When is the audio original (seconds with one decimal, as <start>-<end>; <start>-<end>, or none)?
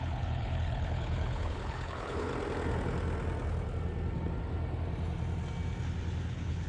2.3-6.3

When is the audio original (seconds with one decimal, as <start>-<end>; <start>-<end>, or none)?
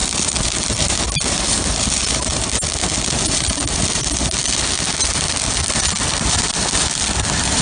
0.0-7.6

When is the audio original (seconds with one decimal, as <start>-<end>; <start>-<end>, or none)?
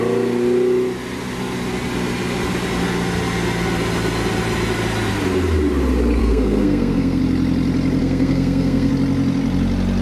0.0-6.2; 7.2-8.0; 8.9-10.0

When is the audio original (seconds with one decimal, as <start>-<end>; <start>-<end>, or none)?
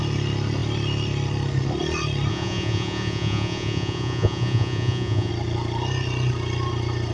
0.0-2.3; 5.3-7.1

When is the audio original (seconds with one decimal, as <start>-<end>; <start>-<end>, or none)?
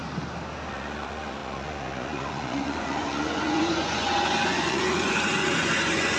0.0-0.7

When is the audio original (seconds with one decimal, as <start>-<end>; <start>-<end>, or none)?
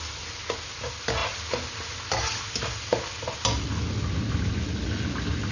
0.0-5.5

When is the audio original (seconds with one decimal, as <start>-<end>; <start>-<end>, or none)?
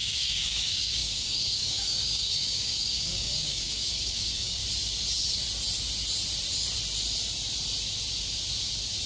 4.6-9.1